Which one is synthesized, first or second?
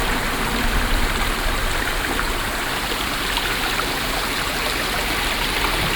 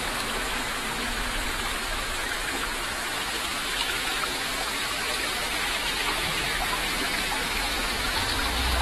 second